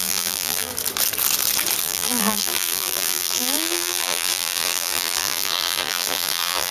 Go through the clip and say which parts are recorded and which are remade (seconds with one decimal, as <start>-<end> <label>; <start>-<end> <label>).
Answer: 0.0-0.7 remade; 0.7-1.8 recorded; 1.8-6.7 remade